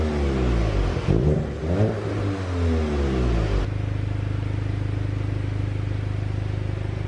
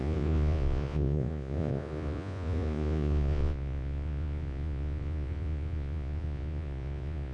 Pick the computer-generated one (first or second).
second